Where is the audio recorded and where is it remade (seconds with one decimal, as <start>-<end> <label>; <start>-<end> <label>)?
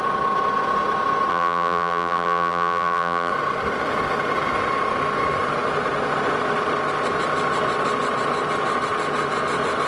0.0-1.3 recorded; 1.3-3.3 remade; 3.3-9.9 recorded